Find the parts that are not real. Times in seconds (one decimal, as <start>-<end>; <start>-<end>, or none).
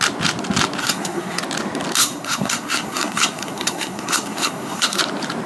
0.8-1.4; 2.0-5.0